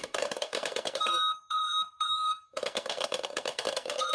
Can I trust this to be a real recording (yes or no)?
no